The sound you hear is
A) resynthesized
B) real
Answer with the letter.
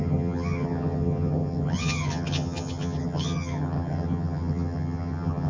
A